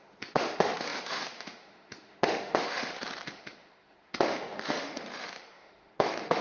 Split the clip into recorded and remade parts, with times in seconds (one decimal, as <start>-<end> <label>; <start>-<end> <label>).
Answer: 0.0-6.4 remade